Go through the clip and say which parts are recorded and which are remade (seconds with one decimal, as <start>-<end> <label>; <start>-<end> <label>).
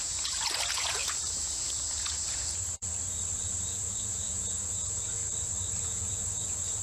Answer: 0.0-2.9 remade; 2.9-3.5 recorded; 3.5-5.2 remade; 5.2-5.8 recorded; 5.8-6.8 remade